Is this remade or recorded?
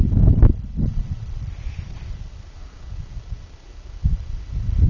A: recorded